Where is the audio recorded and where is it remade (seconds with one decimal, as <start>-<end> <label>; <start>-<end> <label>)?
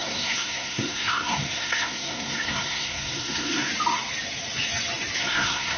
0.0-3.7 remade; 3.7-5.2 recorded; 5.2-5.8 remade